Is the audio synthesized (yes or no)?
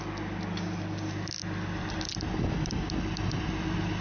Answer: no